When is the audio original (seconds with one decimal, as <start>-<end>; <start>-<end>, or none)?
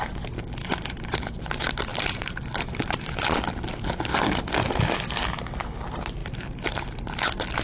0.0-0.6; 1.4-1.9; 3.5-6.2; 7.0-7.6